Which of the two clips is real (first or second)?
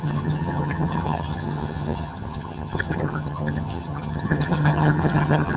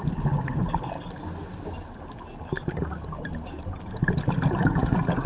second